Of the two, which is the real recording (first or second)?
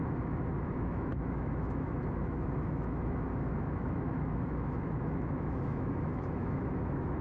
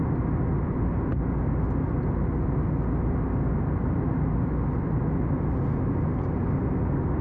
second